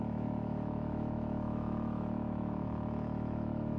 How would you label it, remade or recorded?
remade